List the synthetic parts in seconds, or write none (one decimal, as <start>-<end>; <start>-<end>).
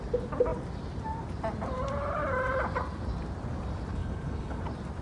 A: 3.9-4.6